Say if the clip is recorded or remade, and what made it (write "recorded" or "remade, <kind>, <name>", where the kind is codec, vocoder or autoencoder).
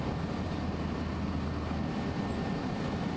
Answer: recorded